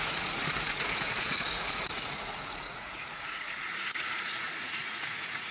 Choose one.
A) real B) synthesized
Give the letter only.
B